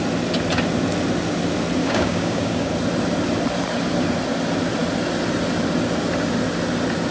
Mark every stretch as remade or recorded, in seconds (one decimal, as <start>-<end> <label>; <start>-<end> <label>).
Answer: 0.0-1.8 recorded; 1.8-2.7 remade; 2.7-7.1 recorded